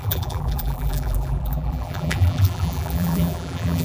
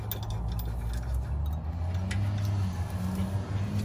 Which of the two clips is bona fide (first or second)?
second